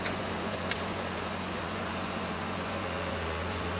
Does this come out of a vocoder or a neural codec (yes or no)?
yes